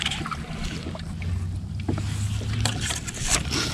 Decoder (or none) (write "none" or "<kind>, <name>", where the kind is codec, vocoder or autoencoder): none